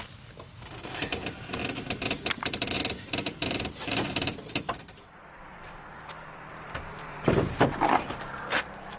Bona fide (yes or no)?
no